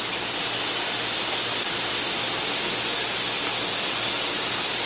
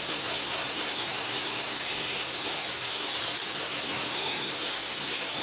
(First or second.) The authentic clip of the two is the first